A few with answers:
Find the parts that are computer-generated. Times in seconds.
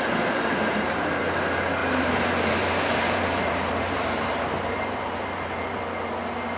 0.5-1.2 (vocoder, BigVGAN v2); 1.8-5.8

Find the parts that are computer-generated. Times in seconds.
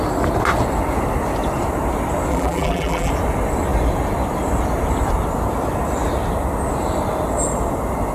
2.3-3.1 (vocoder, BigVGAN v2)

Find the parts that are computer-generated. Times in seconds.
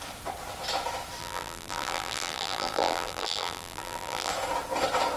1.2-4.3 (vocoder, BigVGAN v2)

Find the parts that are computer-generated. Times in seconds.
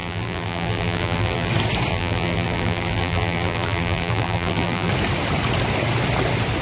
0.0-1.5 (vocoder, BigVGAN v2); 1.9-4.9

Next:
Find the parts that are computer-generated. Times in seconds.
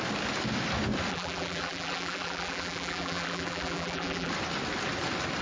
1.1-4.3 (vocoder, BigVGAN v2)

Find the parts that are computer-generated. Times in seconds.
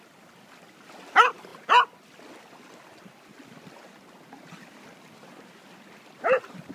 none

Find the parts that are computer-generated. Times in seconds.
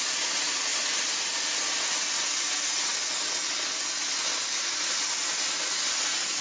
0.7-1.3 (vocoder, BigVGAN v2)